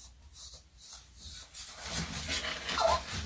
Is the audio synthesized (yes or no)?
no